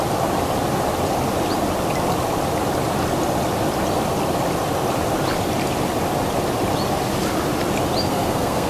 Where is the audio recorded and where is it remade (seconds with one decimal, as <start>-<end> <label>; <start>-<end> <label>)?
0.0-8.1 recorded; 8.1-8.7 remade